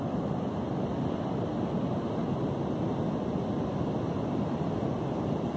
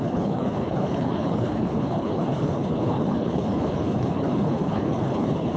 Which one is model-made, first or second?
second